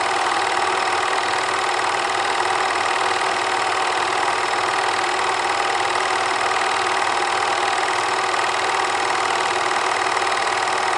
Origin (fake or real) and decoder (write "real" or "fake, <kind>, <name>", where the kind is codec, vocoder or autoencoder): real